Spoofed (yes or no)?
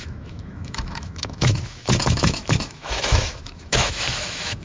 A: yes